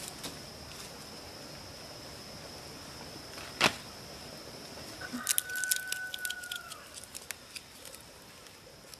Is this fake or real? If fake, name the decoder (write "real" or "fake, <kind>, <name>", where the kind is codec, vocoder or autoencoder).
real